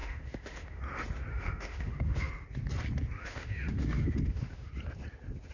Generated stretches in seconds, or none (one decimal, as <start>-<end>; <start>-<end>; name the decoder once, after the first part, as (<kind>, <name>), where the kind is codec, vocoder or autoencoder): 0.0-0.8 (autoencoder, DAC-VAE); 1.3-2.3; 3.2-4.7